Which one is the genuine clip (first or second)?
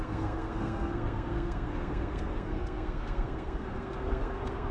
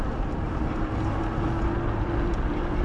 second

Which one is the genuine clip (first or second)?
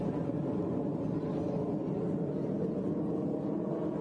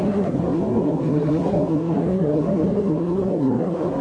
first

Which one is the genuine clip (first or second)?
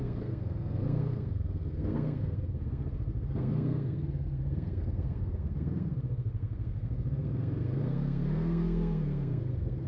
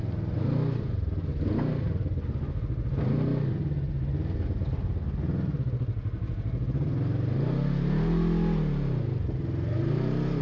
second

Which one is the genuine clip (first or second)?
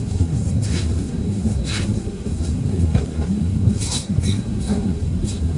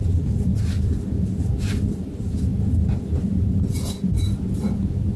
second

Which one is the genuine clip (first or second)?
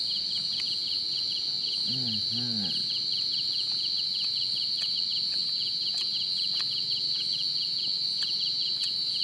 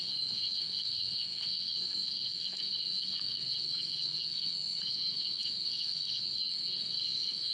first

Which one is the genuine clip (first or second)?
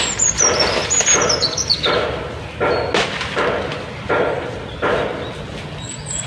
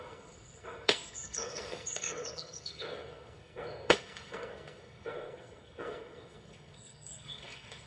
first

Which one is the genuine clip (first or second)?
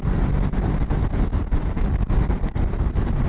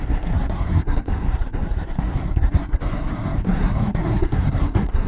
first